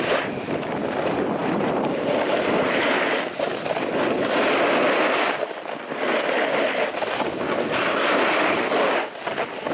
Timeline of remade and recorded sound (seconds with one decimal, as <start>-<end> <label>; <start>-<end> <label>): 0.0-9.7 recorded